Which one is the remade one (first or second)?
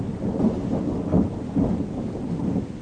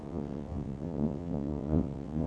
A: second